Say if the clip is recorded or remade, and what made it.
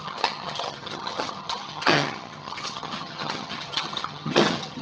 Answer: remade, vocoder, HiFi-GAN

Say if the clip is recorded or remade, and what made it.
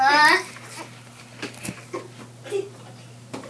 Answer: recorded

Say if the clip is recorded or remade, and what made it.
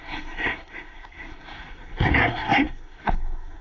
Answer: remade, codec, SNAC